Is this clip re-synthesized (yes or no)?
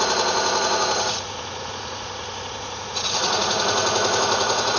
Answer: yes